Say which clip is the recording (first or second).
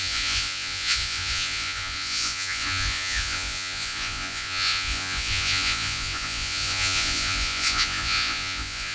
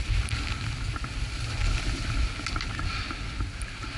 second